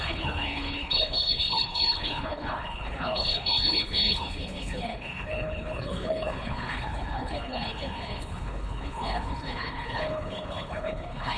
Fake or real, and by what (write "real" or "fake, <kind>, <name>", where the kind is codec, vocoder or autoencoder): fake, codec, HILCodec